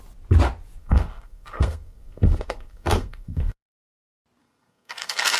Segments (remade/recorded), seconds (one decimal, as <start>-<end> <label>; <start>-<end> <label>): 0.0-0.8 recorded; 0.8-4.0 remade; 4.0-4.4 recorded; 4.4-5.4 remade